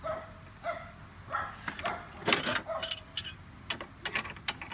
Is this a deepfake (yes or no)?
no